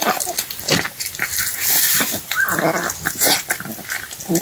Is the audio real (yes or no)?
yes